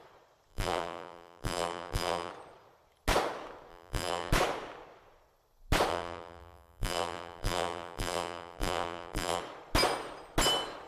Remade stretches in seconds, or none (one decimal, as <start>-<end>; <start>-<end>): 0.5-2.3; 3.7-4.3; 5.9-9.4